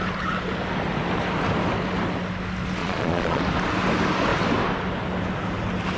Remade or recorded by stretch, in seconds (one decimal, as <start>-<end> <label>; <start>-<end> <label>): 0.0-2.8 recorded; 2.8-3.4 remade; 3.4-6.0 recorded